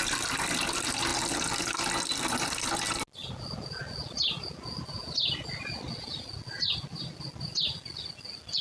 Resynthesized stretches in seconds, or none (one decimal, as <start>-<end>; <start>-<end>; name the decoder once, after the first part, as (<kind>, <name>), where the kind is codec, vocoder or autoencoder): none